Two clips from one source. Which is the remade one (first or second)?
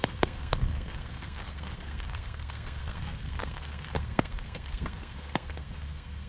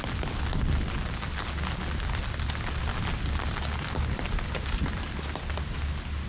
first